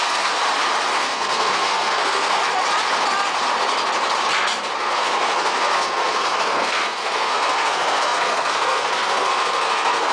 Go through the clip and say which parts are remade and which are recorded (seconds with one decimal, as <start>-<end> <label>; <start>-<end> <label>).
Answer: 0.0-0.4 remade; 0.4-0.9 recorded; 0.9-2.4 remade; 2.4-4.8 recorded; 4.8-10.1 remade